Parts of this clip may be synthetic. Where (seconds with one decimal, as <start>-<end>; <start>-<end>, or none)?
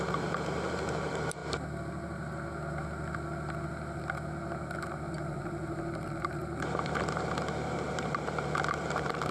0.0-1.4; 5.1-6.4; 7.0-9.3